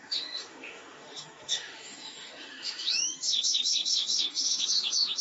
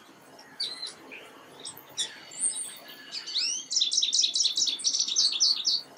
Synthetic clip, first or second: first